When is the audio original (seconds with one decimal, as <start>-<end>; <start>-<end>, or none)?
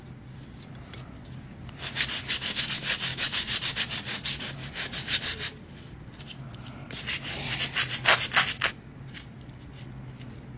0.0-3.1; 3.8-4.6; 5.9-6.8; 7.6-10.6